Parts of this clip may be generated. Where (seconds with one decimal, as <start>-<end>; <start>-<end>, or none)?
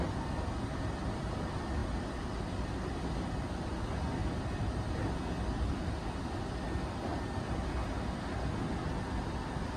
4.2-4.9